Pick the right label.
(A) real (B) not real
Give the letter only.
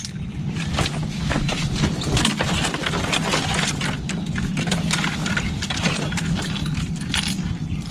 A